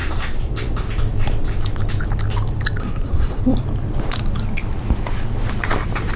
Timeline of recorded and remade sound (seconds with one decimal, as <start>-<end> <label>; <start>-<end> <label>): 0.0-2.8 recorded; 2.8-3.4 remade; 3.4-6.2 recorded